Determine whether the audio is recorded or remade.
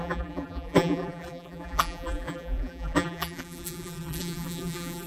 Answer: remade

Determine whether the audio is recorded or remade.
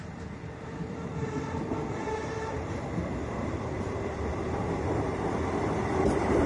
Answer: remade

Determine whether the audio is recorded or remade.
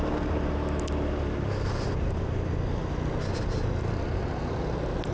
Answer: recorded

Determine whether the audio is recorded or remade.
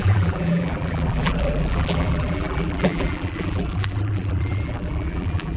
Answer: remade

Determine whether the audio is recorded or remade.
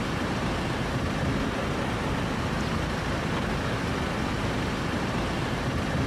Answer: recorded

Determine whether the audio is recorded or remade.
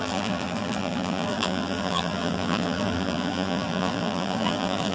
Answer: remade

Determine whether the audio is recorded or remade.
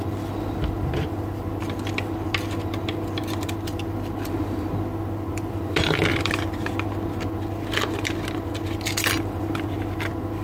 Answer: remade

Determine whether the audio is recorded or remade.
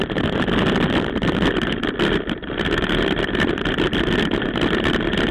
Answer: remade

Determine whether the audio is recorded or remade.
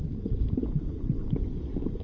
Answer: remade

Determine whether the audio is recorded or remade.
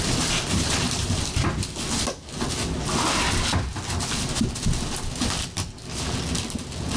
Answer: recorded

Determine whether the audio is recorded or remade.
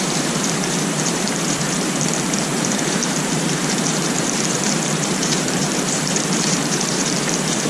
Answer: remade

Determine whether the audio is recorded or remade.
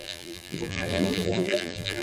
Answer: remade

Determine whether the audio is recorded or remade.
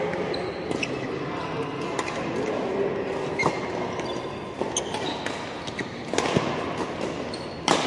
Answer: recorded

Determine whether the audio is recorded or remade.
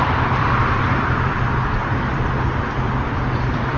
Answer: remade